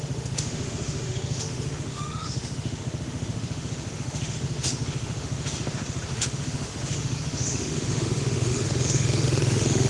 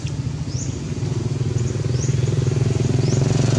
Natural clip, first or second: second